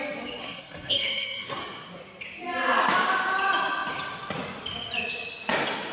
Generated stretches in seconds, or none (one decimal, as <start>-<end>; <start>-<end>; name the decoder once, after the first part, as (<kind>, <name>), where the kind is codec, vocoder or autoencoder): 0.4-1.6 (codec, SNAC)